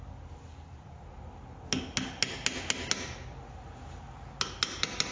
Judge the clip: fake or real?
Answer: real